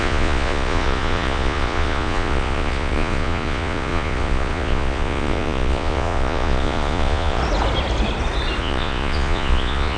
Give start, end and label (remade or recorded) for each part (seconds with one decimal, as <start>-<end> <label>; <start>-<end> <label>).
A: 0.0-7.4 remade; 7.4-8.6 recorded; 8.6-10.0 remade